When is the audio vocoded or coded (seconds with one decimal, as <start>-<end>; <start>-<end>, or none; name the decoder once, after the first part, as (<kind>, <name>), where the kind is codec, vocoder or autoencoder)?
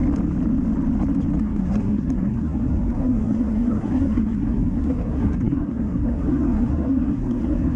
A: 1.4-7.8 (codec, SNAC)